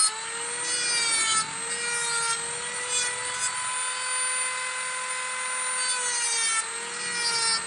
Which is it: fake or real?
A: real